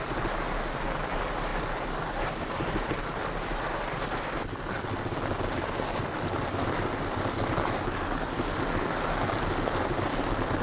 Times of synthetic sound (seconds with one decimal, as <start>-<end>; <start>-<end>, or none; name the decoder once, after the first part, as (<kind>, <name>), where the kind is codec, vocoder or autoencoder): none